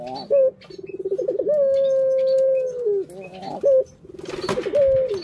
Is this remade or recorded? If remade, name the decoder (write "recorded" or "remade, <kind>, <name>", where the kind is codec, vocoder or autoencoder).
recorded